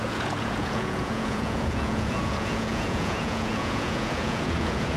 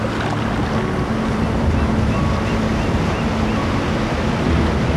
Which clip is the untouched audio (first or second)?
second